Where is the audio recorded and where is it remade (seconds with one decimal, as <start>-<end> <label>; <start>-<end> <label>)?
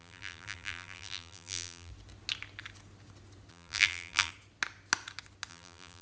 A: 0.0-1.9 remade; 1.9-3.5 recorded; 3.5-4.3 remade; 4.3-5.5 recorded; 5.5-6.0 remade